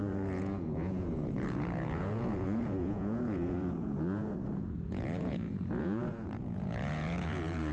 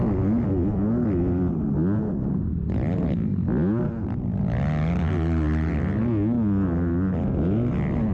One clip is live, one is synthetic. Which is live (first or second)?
second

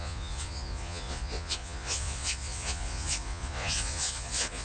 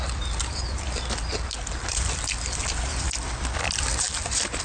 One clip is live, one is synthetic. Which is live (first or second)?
second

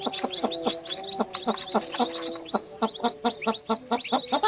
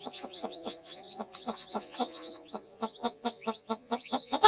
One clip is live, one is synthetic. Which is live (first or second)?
first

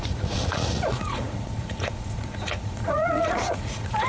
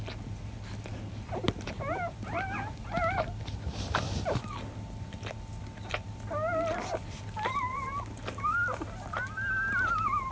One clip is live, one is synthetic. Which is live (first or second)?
second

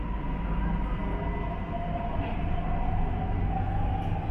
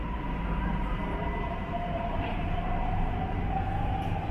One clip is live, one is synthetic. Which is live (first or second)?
first